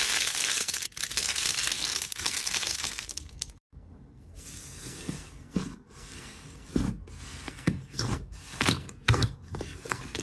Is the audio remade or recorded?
remade